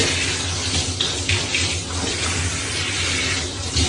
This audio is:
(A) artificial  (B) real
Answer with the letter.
B